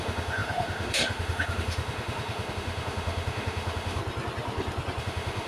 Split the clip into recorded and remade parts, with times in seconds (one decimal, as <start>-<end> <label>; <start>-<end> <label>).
0.0-4.0 remade; 4.0-5.0 recorded; 5.0-5.5 remade